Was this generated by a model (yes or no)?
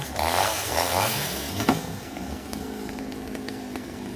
yes